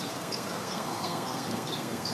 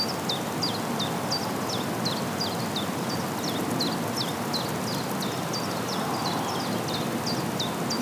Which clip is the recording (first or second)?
second